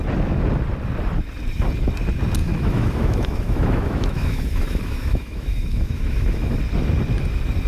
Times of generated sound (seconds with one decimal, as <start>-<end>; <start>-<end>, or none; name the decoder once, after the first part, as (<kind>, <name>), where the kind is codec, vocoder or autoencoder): 2.4-6.6 (autoencoder, DAC-VAE)

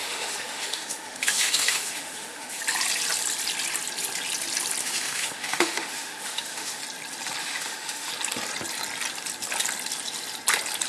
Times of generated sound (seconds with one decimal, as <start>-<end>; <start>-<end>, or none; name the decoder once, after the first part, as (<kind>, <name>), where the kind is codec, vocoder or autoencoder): 0.0-2.6 (autoencoder, DAC-VAE); 4.8-6.8; 7.4-8.1

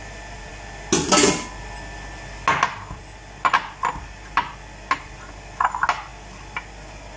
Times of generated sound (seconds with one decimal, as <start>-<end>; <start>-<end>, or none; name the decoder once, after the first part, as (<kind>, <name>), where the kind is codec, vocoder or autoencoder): none